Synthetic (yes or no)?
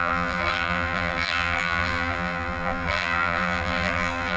yes